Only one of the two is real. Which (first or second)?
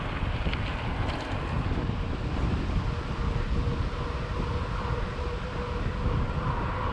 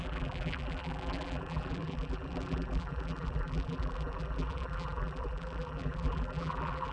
first